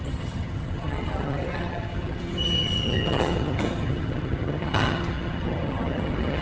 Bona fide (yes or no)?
no